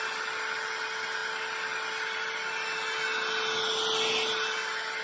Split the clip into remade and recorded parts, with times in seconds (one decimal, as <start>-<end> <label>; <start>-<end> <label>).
0.0-5.0 recorded

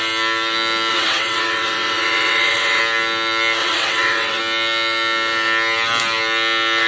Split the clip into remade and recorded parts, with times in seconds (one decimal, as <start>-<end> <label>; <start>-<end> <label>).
0.0-0.9 recorded; 0.9-2.8 remade; 2.8-3.6 recorded; 3.6-4.4 remade; 4.4-6.9 recorded